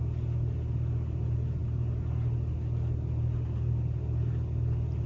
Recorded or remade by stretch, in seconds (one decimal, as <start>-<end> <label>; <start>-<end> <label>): 0.0-5.1 recorded